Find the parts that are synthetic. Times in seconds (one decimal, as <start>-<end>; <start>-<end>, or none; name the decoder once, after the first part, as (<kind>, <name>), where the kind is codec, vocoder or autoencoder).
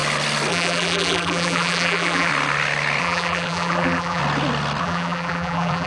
0.5-2.3 (vocoder, BigVGAN v2); 3.0-4.2; 4.8-5.9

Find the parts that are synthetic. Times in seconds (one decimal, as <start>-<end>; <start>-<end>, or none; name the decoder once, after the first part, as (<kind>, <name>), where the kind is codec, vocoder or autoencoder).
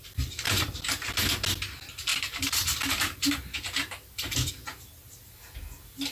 0.0-1.1 (vocoder, BigVGAN v2); 2.1-4.5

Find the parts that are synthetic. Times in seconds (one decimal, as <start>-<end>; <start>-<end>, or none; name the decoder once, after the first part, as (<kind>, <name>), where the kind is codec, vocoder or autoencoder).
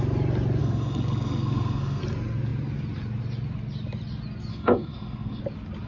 0.6-2.0 (codec, SNAC); 4.5-5.4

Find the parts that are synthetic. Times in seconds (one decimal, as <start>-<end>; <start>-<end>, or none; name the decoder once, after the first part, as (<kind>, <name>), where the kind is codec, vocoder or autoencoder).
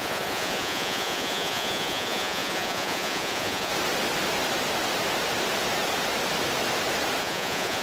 0.0-3.7 (vocoder, Vocos); 7.2-7.8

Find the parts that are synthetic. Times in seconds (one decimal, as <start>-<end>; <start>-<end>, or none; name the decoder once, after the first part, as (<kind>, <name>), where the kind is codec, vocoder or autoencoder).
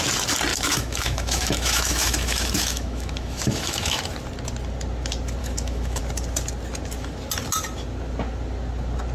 0.5-4.0 (autoencoder, DAC-VAE); 5.4-6.0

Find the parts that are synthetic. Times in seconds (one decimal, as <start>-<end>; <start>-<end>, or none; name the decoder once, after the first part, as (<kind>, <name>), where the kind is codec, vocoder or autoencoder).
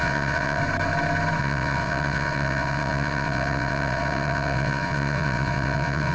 0.0-0.6 (vocoder, WaveNeXt); 1.4-6.1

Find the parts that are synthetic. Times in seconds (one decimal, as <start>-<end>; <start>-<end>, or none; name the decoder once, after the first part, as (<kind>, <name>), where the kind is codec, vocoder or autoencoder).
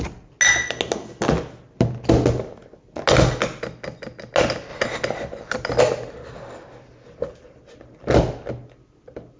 none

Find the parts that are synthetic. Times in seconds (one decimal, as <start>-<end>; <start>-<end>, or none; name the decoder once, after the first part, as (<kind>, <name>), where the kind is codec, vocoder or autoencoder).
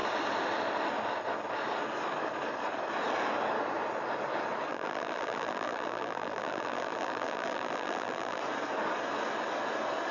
4.7-8.4 (vocoder, BigVGAN v2)